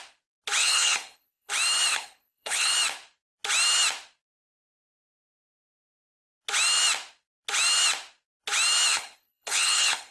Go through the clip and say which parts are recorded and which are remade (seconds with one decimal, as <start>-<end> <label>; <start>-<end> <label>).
0.0-0.6 recorded; 0.6-1.5 remade; 1.5-1.9 recorded; 1.9-2.7 remade; 2.7-8.9 recorded; 8.9-10.1 remade